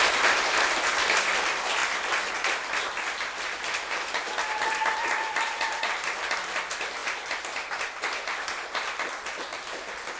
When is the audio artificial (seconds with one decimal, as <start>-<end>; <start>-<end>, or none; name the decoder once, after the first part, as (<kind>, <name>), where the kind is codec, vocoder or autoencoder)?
none